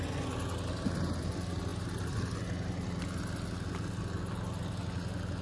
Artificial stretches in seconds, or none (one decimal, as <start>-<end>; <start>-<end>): none